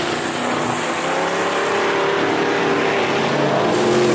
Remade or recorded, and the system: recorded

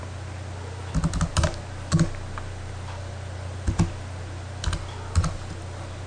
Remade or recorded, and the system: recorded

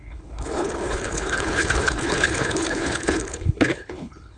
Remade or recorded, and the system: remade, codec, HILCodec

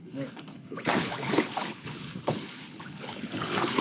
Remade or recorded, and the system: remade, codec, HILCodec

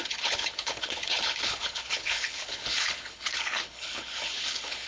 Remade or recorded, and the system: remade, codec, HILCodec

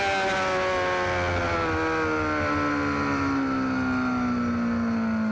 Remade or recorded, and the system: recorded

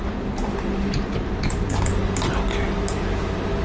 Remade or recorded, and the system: recorded